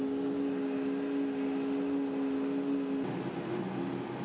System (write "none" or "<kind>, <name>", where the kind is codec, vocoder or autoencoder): none